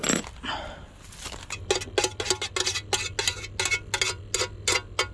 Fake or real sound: real